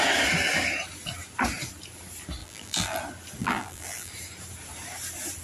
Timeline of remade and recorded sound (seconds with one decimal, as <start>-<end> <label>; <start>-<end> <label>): 0.0-2.4 recorded; 2.4-3.0 remade; 3.0-3.4 recorded; 3.4-4.1 remade; 4.1-5.4 recorded